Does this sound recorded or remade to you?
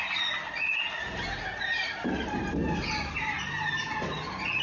recorded